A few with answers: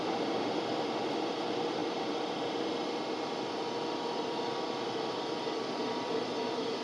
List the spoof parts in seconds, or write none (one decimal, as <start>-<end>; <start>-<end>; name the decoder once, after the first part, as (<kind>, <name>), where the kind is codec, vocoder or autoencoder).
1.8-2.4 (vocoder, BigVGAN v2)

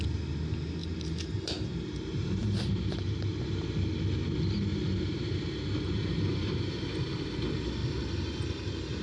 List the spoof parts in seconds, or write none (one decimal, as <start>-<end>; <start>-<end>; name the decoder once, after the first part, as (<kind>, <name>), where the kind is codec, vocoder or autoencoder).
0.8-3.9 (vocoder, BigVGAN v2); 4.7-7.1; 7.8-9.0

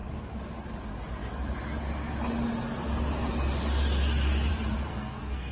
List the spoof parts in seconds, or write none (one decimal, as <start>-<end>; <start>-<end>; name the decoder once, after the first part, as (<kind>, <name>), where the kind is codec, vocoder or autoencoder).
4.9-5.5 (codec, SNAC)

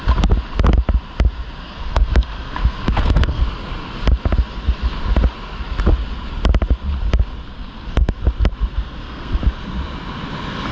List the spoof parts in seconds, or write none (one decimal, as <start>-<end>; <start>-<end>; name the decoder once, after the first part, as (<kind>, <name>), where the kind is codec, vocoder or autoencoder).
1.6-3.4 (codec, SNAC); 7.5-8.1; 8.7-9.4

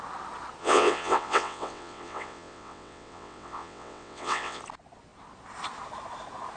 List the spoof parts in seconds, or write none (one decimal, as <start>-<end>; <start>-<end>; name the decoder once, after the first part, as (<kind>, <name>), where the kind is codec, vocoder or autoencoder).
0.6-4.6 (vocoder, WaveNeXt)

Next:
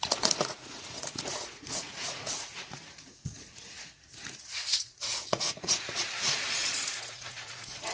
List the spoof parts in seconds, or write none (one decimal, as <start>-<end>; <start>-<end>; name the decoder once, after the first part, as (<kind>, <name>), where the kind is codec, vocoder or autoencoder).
0.0-7.9 (vocoder, Vocos)

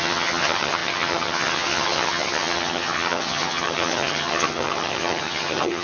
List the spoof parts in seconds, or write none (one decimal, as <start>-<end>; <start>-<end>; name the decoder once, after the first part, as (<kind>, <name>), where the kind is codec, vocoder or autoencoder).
0.0-5.8 (vocoder, HiFi-GAN)

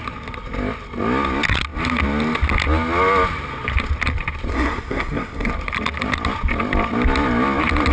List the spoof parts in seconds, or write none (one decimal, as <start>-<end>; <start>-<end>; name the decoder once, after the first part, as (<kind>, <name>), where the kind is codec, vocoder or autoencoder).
4.5-5.5 (codec, SNAC)